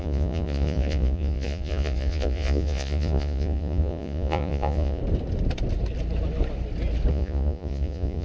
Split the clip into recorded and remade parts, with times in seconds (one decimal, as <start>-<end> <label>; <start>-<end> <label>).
0.0-5.0 remade; 5.0-7.1 recorded; 7.1-8.2 remade